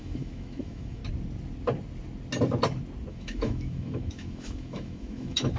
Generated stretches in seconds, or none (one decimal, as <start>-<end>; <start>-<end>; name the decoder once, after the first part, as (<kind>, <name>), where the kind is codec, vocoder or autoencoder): 0.0-1.0 (autoencoder, DAC-VAE); 3.1-5.6